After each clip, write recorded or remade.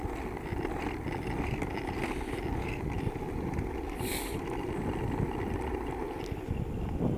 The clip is recorded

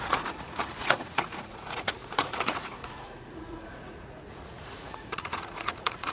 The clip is remade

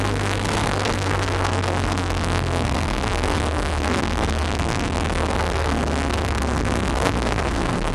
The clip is remade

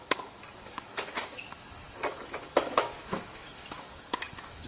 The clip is remade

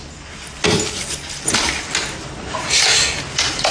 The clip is recorded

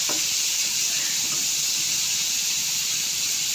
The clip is remade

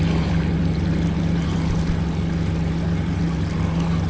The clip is recorded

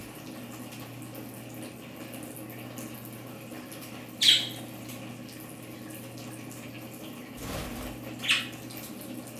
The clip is recorded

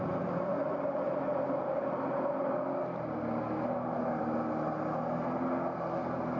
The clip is recorded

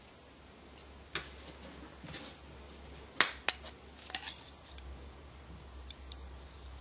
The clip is recorded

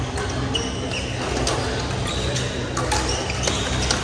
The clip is recorded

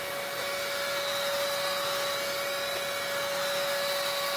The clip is recorded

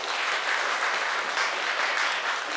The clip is recorded